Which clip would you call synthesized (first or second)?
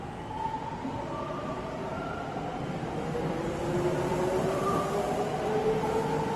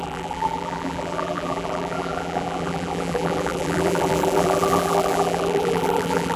second